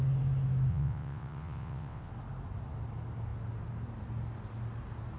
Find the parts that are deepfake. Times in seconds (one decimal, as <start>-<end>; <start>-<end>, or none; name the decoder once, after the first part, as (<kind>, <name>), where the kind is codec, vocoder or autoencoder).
0.7-2.1 (vocoder, WaveNeXt)